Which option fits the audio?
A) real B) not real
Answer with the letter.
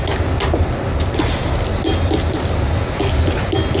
A